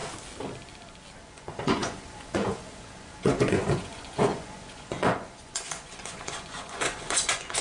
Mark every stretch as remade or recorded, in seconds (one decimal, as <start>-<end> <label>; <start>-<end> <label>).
0.0-1.2 recorded; 1.2-7.6 remade